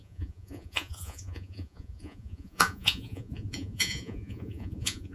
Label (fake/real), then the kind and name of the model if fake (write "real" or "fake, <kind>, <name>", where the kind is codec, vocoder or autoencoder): fake, vocoder, Vocos